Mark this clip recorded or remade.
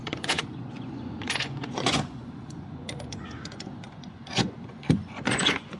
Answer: remade